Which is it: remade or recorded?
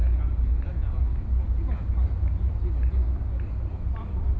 recorded